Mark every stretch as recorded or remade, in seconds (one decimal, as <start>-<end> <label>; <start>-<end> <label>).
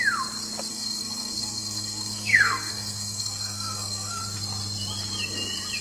0.0-0.7 recorded; 0.7-4.2 remade; 4.2-5.8 recorded